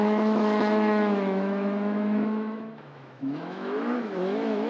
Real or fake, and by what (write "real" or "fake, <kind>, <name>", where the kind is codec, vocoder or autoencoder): fake, autoencoder, DAC-VAE